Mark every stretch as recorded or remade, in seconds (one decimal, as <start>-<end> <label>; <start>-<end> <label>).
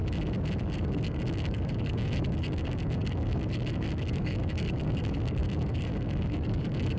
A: 0.0-0.6 recorded; 0.6-7.0 remade